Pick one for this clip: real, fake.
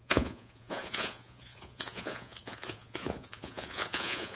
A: fake